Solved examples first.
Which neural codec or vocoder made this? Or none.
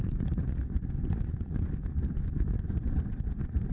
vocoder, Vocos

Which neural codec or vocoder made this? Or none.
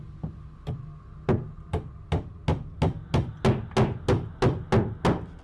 none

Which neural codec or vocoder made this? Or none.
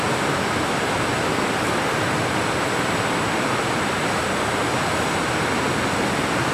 none